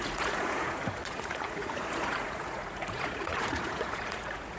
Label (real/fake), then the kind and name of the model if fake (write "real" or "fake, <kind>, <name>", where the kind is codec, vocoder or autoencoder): fake, vocoder, Vocos